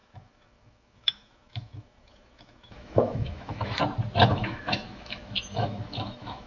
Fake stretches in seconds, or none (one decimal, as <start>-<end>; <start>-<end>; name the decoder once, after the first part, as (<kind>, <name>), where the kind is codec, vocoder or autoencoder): 0.0-3.8 (autoencoder, DAC-VAE); 4.3-6.5